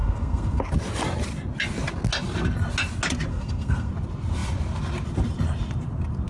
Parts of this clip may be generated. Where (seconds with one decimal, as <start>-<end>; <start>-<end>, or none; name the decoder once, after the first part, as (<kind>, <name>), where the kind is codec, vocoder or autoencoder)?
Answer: 0.0-0.6 (codec, SNAC); 3.3-3.9

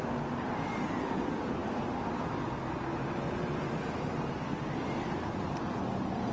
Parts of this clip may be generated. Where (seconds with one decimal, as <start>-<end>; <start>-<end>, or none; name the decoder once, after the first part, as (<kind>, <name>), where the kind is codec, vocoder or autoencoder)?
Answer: none

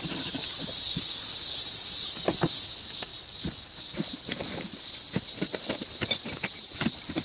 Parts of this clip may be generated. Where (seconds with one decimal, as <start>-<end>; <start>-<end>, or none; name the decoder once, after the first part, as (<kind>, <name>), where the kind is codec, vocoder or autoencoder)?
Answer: none

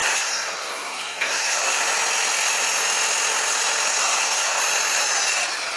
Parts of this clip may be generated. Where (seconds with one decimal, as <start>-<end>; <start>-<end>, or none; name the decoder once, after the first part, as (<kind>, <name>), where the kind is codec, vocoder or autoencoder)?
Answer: 0.0-1.8 (codec, SNAC); 4.0-4.6

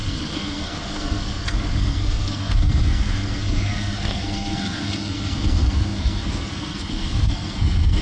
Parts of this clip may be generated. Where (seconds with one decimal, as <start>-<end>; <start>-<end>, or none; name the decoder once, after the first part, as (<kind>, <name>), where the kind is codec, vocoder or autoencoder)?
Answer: 0.0-8.0 (codec, SNAC)

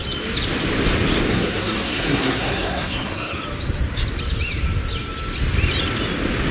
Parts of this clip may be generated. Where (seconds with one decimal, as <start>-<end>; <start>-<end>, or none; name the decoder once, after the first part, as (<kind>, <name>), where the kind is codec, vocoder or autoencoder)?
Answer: 1.3-3.4 (codec, SNAC)

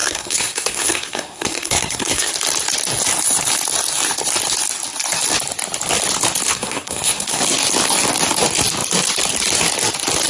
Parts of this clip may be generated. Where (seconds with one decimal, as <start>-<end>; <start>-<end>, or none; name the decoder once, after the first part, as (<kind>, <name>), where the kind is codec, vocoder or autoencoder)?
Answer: 0.0-2.3 (codec, SNAC); 6.5-7.4